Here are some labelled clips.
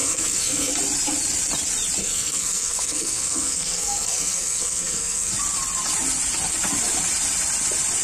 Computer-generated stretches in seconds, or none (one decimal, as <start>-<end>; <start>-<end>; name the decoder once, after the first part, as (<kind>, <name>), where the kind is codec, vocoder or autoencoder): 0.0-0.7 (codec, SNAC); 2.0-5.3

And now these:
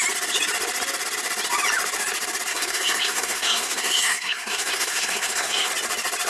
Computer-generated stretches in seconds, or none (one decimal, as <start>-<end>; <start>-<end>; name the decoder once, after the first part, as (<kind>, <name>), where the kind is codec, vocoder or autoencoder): 2.5-5.7 (codec, SNAC)

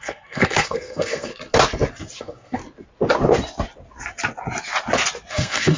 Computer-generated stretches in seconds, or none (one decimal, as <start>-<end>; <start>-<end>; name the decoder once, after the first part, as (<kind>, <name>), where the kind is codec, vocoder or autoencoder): 0.0-1.3 (codec, SNAC); 2.2-2.6; 5.3-5.8

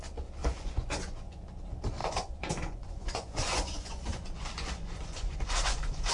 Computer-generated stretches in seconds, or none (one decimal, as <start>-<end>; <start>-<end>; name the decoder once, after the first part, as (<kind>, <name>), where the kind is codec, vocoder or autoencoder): 0.4-1.4 (vocoder, Vocos); 2.0-6.1